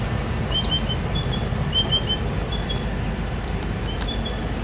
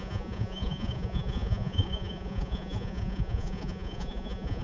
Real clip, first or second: first